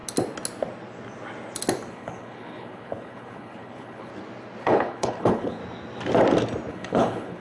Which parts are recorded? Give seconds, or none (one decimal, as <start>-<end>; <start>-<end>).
0.0-1.9; 4.1-4.6; 5.6-6.7